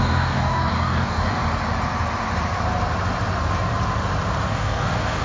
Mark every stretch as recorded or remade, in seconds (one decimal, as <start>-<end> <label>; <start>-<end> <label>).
0.0-1.4 remade; 1.4-4.5 recorded; 4.5-5.2 remade